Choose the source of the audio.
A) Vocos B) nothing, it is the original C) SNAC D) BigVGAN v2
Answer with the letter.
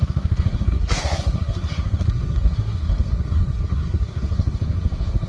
C